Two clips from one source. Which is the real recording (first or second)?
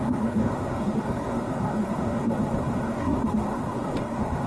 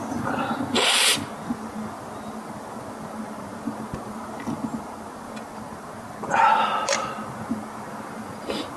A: second